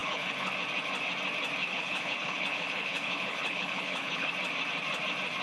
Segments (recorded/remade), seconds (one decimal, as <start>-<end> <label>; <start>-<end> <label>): 0.0-0.5 remade; 0.5-1.6 recorded; 1.6-4.3 remade; 4.3-5.4 recorded